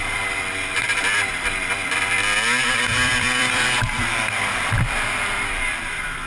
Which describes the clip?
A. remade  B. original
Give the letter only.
A